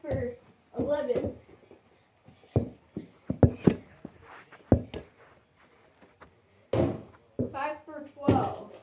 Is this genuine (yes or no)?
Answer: yes